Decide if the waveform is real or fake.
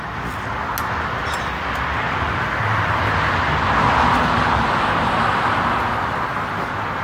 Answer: real